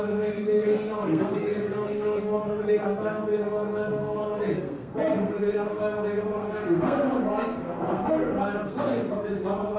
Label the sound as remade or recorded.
remade